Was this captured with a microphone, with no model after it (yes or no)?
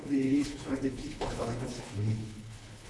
no